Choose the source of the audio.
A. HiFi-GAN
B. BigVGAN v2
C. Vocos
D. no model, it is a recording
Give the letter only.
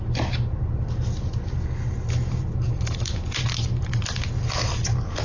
D